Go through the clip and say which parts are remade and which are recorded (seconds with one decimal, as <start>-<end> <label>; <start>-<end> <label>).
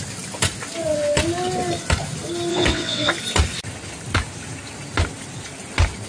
0.0-2.5 recorded; 2.5-3.1 remade; 3.1-6.1 recorded